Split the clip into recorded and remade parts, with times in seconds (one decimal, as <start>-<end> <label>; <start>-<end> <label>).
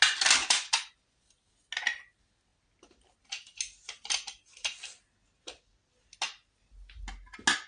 0.0-0.4 recorded; 0.4-1.2 remade; 1.2-7.7 recorded